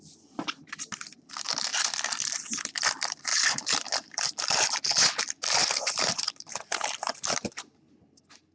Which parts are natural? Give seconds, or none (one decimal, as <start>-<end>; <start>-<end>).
0.0-3.3; 4.2-5.6; 7.6-8.5